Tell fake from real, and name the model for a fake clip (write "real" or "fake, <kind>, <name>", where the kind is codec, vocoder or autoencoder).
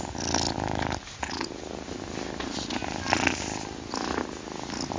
real